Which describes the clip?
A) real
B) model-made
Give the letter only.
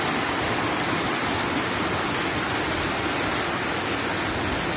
A